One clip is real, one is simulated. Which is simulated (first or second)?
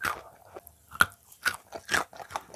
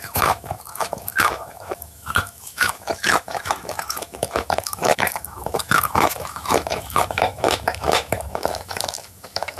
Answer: second